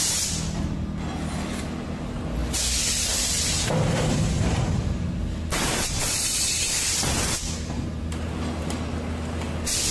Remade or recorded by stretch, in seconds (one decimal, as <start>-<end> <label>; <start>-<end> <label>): 0.0-5.2 recorded; 5.2-7.1 remade; 7.1-9.9 recorded